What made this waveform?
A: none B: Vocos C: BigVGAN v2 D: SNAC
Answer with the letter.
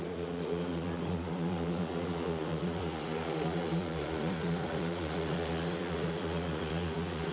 B